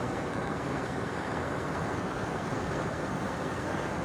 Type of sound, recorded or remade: remade